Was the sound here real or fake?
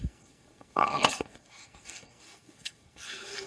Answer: fake